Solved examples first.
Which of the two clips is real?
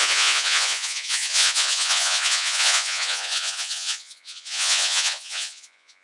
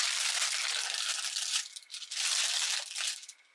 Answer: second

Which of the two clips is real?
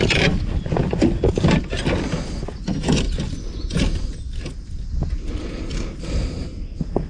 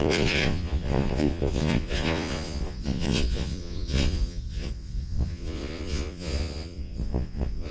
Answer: first